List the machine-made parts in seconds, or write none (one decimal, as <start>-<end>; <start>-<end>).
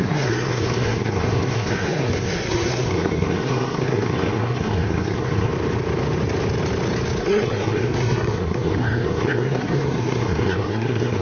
0.0-5.5; 7.2-11.2